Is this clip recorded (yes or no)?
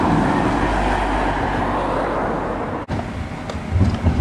yes